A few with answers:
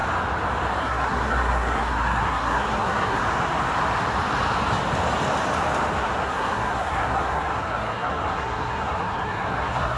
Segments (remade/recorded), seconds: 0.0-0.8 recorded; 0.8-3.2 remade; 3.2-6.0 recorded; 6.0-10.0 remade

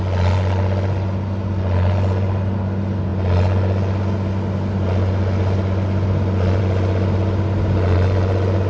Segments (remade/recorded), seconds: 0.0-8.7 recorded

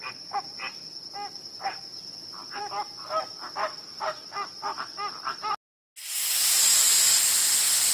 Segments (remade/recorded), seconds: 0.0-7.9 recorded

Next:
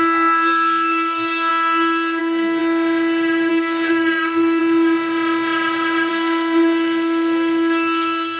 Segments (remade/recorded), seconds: 0.0-2.6 remade; 2.6-3.5 recorded; 3.5-4.6 remade; 4.6-6.1 recorded; 6.1-8.4 remade

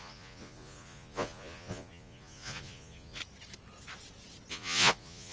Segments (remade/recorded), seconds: 0.0-3.2 remade; 3.2-4.5 recorded; 4.5-5.3 remade

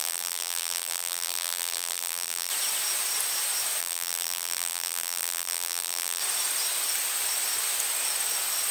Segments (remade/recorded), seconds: 0.0-2.5 remade; 2.5-3.8 recorded; 3.8-6.2 remade; 6.2-8.7 recorded

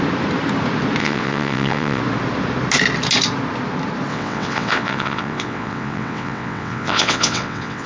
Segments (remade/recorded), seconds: 0.0-1.0 recorded; 1.0-2.0 remade; 2.0-4.1 recorded; 4.1-7.9 remade